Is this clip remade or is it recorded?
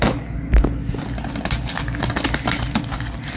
recorded